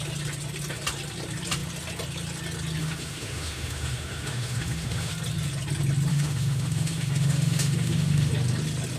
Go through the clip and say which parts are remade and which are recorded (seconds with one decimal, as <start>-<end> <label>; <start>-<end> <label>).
0.0-2.8 recorded; 2.8-5.1 remade; 5.1-6.1 recorded; 6.1-8.3 remade; 8.3-9.0 recorded